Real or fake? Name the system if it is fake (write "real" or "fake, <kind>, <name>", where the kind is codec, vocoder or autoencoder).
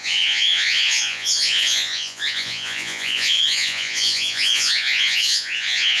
fake, vocoder, Vocos